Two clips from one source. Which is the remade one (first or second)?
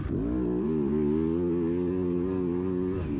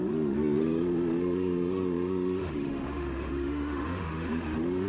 second